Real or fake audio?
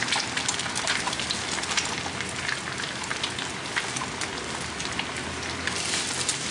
real